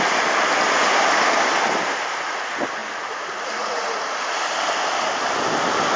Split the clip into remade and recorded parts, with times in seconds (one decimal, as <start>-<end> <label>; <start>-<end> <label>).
0.0-6.0 recorded